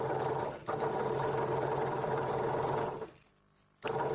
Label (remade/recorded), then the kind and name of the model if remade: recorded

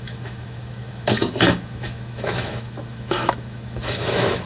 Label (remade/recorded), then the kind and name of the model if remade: remade, autoencoder, DAC-VAE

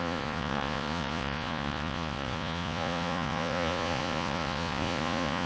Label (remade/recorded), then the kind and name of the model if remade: remade, vocoder, Vocos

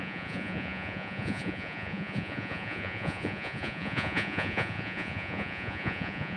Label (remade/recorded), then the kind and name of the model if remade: remade, vocoder, Vocos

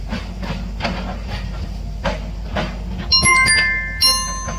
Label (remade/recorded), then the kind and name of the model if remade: recorded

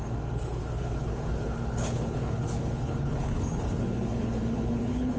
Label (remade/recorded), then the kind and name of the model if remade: remade, codec, HILCodec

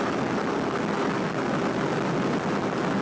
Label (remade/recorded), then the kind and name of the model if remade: recorded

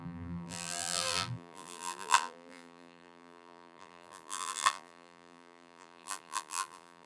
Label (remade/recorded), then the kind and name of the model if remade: remade, vocoder, BigVGAN v2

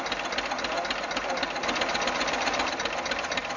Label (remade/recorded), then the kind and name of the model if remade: recorded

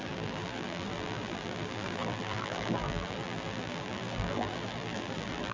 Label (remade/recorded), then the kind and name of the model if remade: remade, vocoder, BigVGAN v2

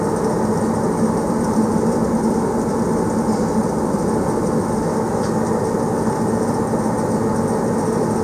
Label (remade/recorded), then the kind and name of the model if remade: recorded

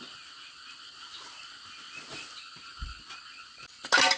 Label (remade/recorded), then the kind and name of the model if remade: remade, vocoder, BigVGAN v2